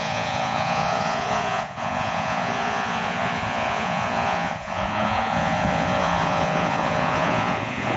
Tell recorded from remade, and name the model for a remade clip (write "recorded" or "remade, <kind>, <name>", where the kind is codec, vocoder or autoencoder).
remade, vocoder, Vocos